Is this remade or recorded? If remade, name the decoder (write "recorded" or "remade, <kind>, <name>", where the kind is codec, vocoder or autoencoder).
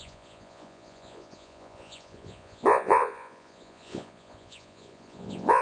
remade, vocoder, Vocos